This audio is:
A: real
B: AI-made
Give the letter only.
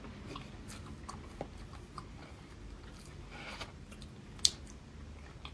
A